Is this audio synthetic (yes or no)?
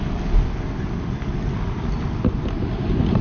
no